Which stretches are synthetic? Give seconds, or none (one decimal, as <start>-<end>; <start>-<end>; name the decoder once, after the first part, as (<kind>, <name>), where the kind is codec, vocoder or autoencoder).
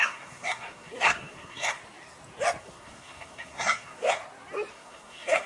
0.0-1.8 (codec, SNAC); 2.6-4.2; 4.7-5.5